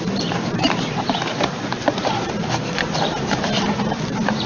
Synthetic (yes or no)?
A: yes